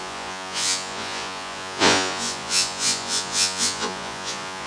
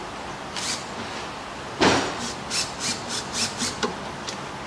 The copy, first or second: first